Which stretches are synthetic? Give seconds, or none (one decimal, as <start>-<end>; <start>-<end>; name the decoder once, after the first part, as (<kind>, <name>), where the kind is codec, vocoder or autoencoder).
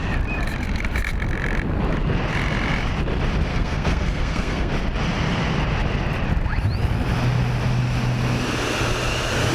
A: 3.5-4.7 (codec, SNAC)